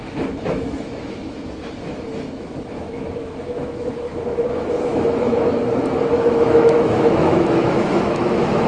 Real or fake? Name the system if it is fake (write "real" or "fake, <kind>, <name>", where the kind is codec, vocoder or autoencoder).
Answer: fake, autoencoder, DAC-VAE